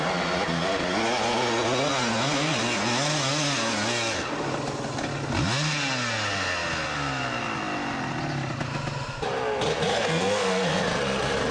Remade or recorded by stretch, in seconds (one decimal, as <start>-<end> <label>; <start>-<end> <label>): 0.0-9.9 recorded; 9.9-10.8 remade; 10.8-11.5 recorded